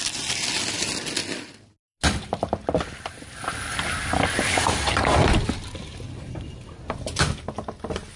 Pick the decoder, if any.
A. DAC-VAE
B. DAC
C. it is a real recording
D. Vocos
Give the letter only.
C